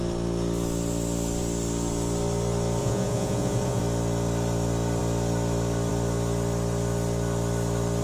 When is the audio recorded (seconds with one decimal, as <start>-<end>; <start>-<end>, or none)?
0.0-2.8; 3.8-8.0